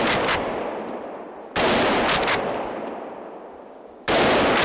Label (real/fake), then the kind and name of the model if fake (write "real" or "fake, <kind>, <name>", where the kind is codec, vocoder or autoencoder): real